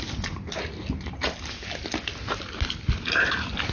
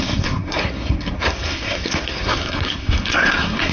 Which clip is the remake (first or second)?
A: second